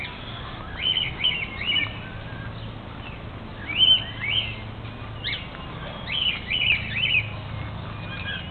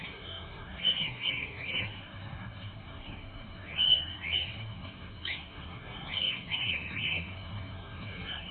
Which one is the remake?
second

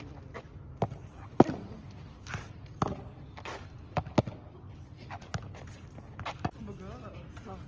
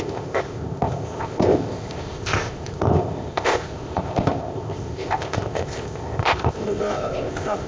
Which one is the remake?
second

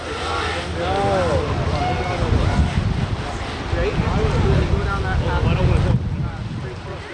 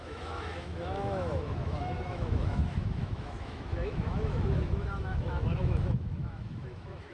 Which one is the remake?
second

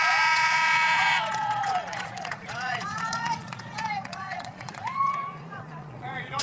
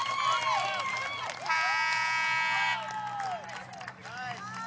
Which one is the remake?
first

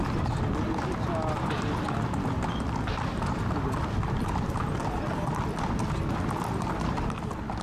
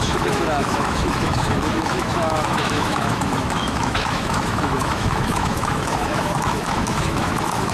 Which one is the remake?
second